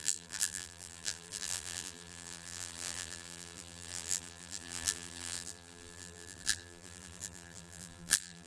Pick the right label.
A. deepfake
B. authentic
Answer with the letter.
A